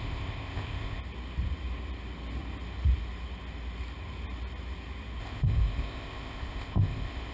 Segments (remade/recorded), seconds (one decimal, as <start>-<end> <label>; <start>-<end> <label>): 0.0-1.0 remade; 1.0-5.2 recorded; 5.2-7.3 remade